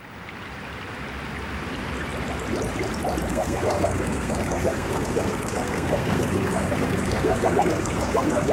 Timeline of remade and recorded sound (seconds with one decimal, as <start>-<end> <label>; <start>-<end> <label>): 0.0-3.3 recorded; 3.3-8.5 remade